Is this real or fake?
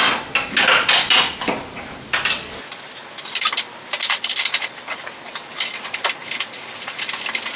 real